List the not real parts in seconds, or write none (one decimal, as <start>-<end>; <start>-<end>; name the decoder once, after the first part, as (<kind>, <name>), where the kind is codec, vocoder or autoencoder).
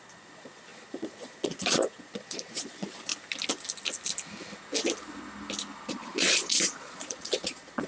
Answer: 0.0-3.1 (vocoder, Vocos); 5.9-7.9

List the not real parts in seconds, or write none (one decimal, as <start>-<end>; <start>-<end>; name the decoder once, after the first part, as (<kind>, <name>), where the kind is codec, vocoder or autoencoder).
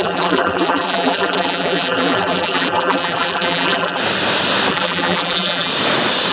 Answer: 0.0-4.0 (vocoder, BigVGAN v2); 4.7-5.7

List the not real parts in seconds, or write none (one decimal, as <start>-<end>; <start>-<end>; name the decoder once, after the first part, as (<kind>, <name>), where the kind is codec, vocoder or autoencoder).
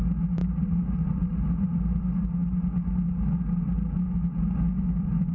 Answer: 0.4-1.6 (vocoder, BigVGAN v2)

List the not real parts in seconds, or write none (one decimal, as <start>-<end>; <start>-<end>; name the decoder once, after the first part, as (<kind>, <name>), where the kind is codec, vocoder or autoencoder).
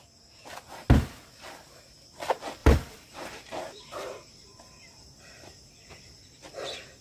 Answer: 2.6-6.1 (vocoder, BigVGAN v2)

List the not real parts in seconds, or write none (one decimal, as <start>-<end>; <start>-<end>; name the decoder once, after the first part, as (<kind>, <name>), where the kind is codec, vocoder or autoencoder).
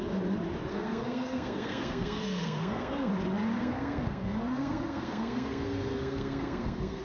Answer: 0.7-3.1 (codec, SNAC); 3.6-7.0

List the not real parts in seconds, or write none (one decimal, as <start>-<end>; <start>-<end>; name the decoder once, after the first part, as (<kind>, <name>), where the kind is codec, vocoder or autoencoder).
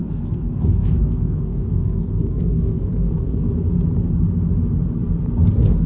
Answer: 0.0-3.5 (codec, SNAC)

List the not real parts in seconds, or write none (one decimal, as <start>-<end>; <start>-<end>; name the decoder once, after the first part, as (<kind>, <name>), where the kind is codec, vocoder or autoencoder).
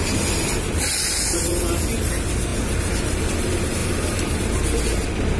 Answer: none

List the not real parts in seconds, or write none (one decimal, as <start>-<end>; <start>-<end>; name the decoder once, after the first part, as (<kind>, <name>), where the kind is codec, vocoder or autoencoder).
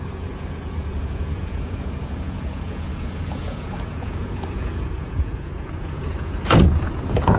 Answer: 0.0-7.4 (vocoder, Vocos)